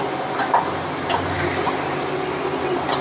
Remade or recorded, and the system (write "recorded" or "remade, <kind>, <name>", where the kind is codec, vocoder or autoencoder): recorded